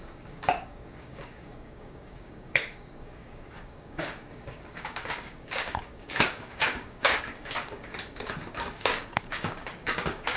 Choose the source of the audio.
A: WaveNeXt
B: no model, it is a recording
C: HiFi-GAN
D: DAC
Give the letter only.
D